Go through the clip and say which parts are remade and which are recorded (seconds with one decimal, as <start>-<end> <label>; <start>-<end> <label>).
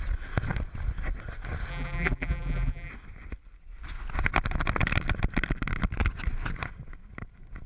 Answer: 0.0-1.7 recorded; 1.7-2.9 remade; 2.9-7.7 recorded